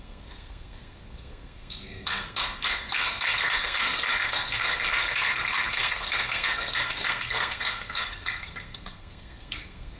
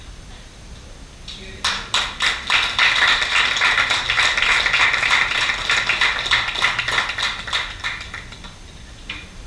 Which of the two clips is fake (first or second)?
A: first